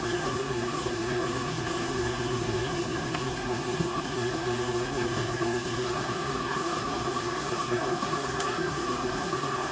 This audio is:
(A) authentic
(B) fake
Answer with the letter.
B